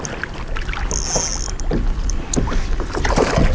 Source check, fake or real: real